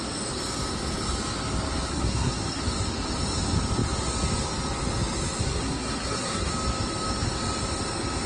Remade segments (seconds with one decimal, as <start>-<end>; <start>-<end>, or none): 1.9-2.6; 5.4-6.5